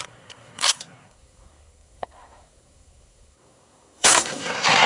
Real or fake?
fake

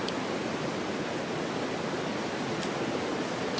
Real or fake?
real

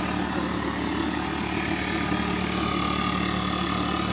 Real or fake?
real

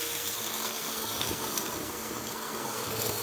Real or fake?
fake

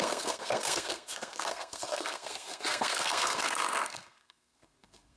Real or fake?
fake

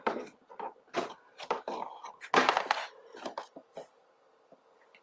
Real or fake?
real